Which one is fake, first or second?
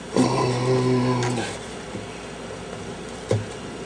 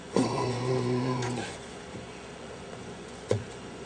second